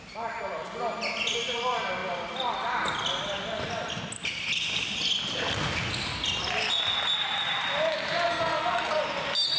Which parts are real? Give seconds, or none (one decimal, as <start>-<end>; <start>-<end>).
0.0-8.3; 9.0-9.6